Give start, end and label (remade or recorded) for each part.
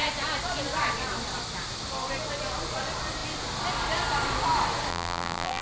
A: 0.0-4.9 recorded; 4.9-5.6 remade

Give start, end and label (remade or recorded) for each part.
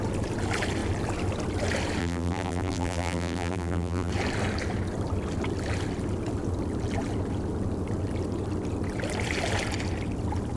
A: 0.0-2.0 recorded; 2.0-4.1 remade; 4.1-10.6 recorded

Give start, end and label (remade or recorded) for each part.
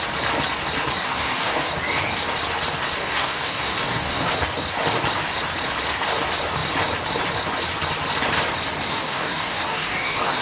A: 0.0-1.0 recorded; 1.0-1.7 remade; 1.7-3.0 recorded; 3.0-4.3 remade; 4.3-8.9 recorded; 8.9-10.4 remade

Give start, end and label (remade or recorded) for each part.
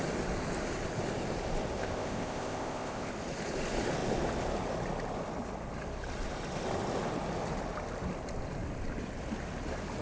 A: 0.0-1.8 recorded; 1.8-3.1 remade; 3.1-10.0 recorded